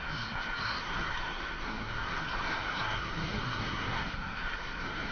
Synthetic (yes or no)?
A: yes